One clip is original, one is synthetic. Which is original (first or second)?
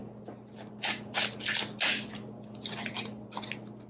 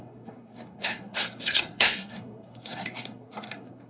first